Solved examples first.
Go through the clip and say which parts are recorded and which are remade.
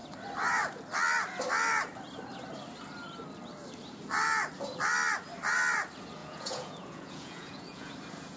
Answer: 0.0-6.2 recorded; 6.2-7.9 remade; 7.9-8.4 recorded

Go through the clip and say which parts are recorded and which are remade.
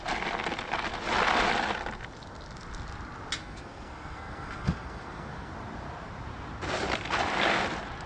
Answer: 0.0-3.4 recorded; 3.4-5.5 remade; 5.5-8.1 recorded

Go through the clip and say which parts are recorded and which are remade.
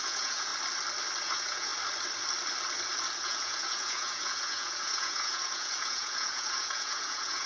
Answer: 0.0-0.5 remade; 0.5-1.2 recorded; 1.2-1.7 remade; 1.7-3.2 recorded; 3.2-7.5 remade